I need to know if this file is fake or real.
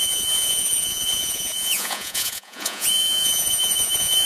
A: fake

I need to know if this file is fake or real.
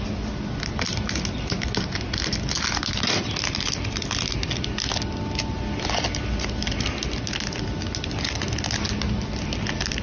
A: real